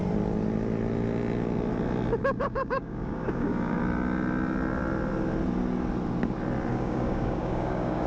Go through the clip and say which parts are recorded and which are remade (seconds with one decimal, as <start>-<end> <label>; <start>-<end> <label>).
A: 0.0-2.2 recorded; 2.2-3.8 remade; 3.8-6.7 recorded; 6.7-8.1 remade